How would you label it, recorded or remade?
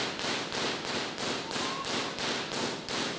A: recorded